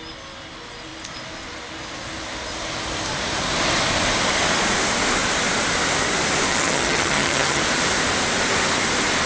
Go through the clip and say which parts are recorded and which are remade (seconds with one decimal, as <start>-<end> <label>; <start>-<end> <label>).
0.0-6.5 recorded; 6.5-7.6 remade; 7.6-9.3 recorded